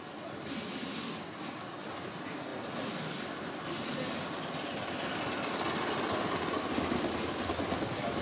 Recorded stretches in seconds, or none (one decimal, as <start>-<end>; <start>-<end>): 0.0-8.2